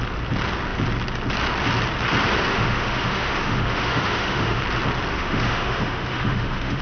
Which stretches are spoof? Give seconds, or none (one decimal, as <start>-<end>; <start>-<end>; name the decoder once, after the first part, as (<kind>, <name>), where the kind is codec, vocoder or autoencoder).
2.5-4.6 (autoencoder, DAC-VAE); 5.1-6.8